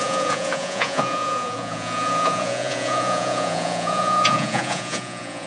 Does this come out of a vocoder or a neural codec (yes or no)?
yes